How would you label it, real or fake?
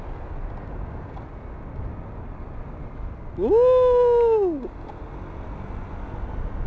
real